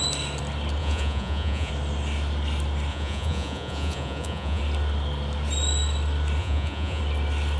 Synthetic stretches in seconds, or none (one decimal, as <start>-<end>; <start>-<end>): 0.8-1.7; 2.9-4.6; 6.4-7.0